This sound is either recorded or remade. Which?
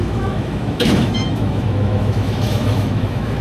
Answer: remade